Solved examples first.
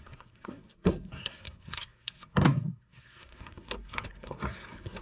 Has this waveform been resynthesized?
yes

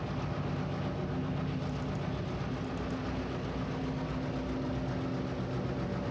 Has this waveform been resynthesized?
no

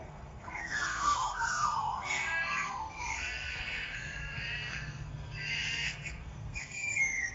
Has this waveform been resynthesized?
yes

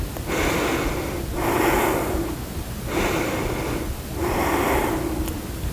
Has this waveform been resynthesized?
no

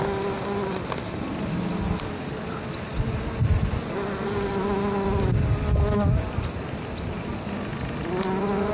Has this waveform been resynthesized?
no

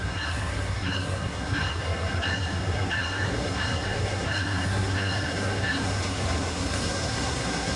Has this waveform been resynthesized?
yes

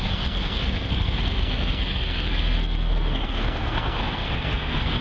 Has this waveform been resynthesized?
yes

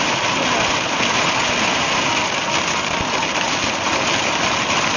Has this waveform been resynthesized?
no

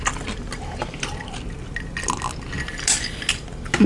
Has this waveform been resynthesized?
no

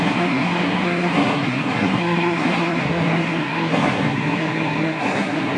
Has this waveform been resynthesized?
yes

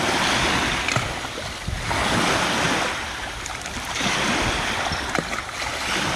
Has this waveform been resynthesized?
no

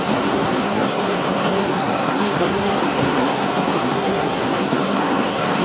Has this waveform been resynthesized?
yes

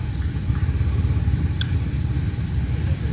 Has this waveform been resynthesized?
no